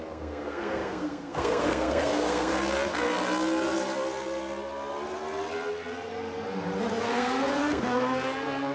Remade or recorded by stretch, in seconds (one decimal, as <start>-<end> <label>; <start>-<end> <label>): 0.0-2.5 remade; 2.5-7.0 recorded; 7.0-8.7 remade